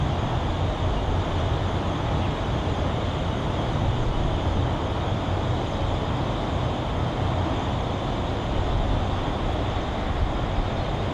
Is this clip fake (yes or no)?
no